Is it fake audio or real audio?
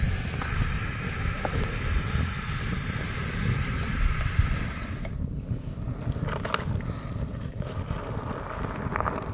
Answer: real